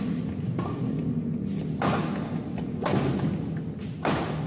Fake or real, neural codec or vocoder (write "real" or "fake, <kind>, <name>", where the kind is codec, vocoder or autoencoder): real